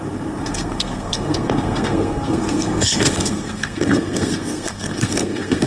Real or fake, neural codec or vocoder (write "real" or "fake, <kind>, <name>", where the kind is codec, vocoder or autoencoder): fake, codec, SNAC